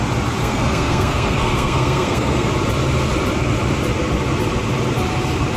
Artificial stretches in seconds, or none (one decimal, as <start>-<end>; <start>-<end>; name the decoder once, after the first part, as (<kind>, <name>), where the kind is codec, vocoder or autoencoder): 0.4-2.5 (codec, SNAC)